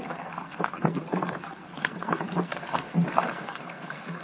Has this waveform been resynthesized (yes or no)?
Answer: yes